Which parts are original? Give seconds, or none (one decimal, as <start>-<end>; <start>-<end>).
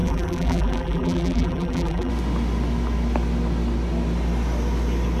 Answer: 2.1-5.2